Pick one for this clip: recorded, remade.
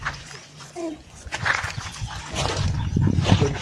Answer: remade